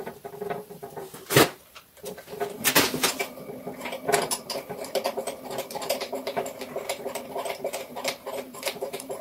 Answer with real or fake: fake